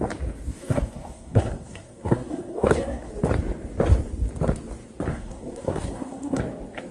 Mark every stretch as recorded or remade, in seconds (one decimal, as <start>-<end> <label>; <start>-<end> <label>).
0.0-0.5 recorded; 0.5-3.1 remade; 3.1-5.1 recorded; 5.1-6.4 remade; 6.4-6.9 recorded